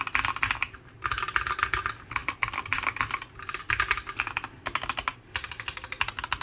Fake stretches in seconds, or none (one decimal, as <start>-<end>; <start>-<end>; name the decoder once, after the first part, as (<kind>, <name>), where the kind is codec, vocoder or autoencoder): 2.2-3.6 (vocoder, BigVGAN v2)